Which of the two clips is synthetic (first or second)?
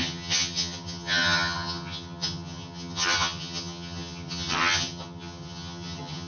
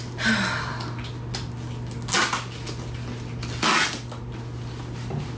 first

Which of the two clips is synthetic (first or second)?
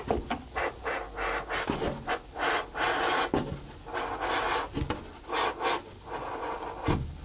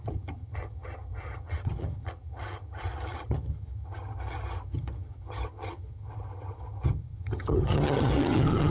second